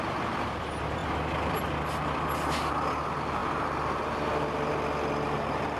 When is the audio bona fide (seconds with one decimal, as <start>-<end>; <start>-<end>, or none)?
0.0-5.8